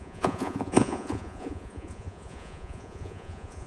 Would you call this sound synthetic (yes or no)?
yes